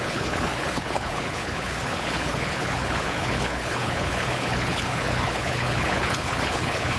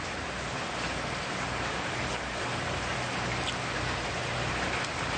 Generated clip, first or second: first